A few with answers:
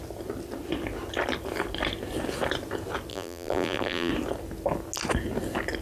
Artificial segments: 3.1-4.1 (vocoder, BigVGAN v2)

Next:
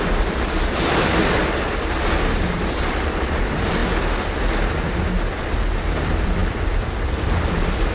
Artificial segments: 0.0-3.8 (vocoder, BigVGAN v2); 4.7-7.9